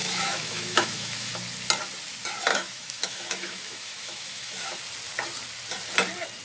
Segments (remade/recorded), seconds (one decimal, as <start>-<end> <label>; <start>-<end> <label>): 0.0-1.3 remade; 1.3-2.5 recorded; 2.5-4.8 remade; 4.8-6.4 recorded